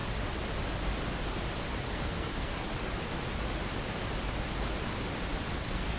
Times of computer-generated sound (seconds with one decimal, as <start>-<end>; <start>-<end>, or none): 1.9-2.5; 5.6-6.0